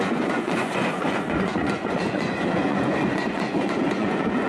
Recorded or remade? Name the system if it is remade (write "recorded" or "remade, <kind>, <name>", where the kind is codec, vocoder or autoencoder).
remade, vocoder, Vocos